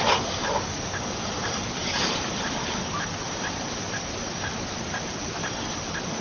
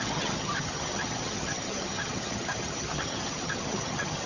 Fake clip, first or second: second